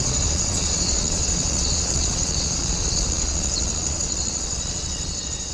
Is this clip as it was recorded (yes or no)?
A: no